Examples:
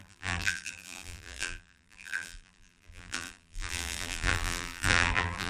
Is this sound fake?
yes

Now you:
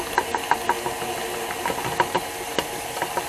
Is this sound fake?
no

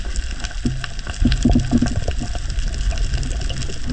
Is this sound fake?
no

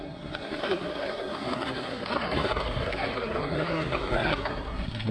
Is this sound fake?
yes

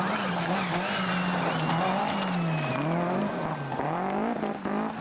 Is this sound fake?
no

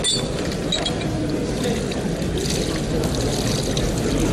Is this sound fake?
no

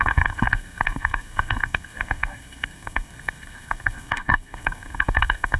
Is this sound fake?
yes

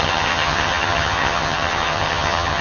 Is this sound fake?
yes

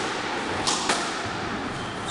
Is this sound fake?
no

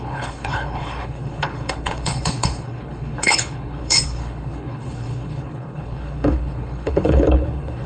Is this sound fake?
yes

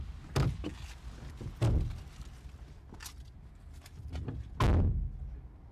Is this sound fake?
no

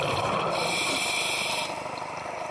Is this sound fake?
no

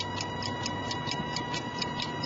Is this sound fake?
no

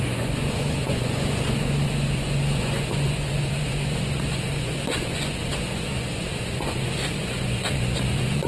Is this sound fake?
yes